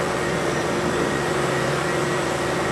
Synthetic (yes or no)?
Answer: yes